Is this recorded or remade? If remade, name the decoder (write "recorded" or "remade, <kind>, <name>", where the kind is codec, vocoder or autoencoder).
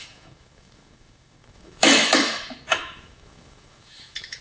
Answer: remade, autoencoder, DAC-VAE